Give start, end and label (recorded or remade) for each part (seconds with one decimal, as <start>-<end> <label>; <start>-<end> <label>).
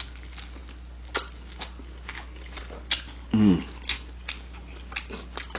0.0-5.6 recorded